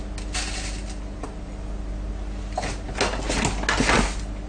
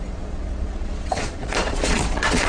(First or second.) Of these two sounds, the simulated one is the second